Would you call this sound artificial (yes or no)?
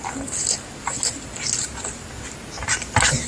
no